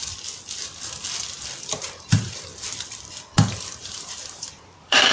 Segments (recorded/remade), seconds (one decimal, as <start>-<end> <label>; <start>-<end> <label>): 0.0-1.6 recorded; 1.6-2.5 remade; 2.5-3.8 recorded; 3.8-5.1 remade